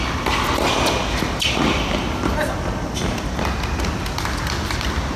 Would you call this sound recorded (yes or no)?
yes